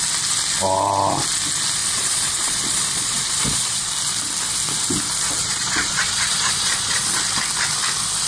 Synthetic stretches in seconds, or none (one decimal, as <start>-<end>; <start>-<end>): 1.8-3.9; 5.4-7.2